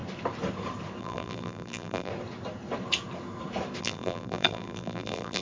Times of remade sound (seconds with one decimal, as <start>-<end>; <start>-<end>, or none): 1.0-2.1; 3.8-5.4